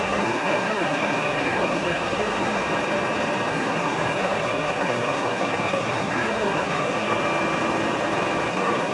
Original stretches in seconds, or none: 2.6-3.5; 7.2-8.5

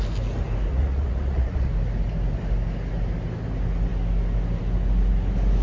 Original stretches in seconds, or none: 0.0-0.7; 1.7-5.6

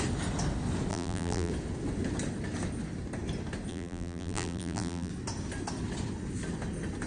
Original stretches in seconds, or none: 0.0-0.9; 1.5-3.7; 5.1-7.1

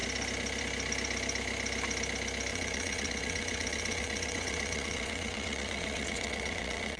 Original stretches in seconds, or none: 0.0-2.5

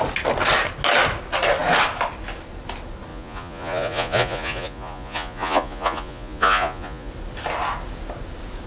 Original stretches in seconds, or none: 0.0-3.1; 7.1-8.7

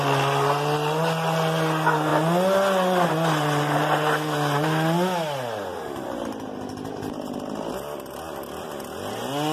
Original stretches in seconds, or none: 0.0-9.5

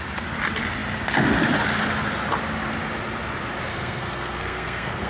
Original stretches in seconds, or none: 0.0-3.7